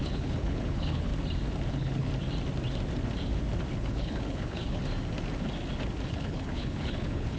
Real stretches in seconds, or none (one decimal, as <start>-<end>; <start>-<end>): 1.1-1.7; 2.1-3.7; 4.8-6.1

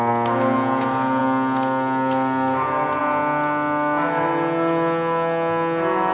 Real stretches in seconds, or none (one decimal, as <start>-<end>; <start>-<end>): 0.0-6.1

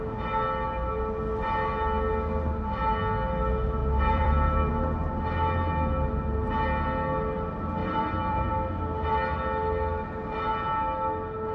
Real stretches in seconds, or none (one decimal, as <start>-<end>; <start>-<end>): 0.0-3.8; 4.7-7.8; 8.5-11.5

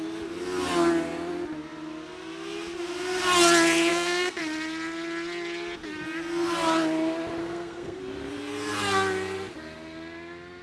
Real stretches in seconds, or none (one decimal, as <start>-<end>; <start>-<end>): 0.0-3.9; 4.4-7.4; 8.0-10.6